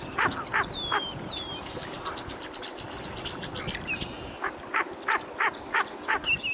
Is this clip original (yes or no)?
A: yes